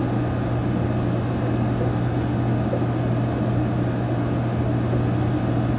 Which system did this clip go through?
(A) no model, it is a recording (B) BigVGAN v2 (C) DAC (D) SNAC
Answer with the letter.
A